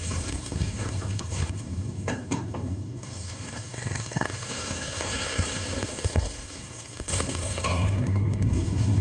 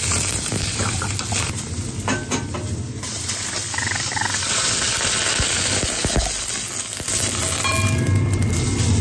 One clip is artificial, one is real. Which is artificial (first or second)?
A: first